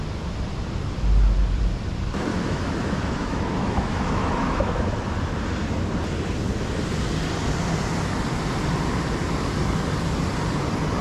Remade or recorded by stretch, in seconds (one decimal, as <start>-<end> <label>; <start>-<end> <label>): 0.0-2.3 recorded; 2.3-4.9 remade; 4.9-11.0 recorded